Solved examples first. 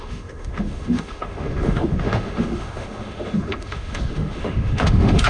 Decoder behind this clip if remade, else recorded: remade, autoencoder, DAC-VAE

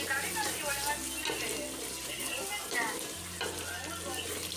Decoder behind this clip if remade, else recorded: recorded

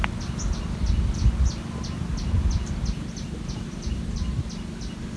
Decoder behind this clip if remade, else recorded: recorded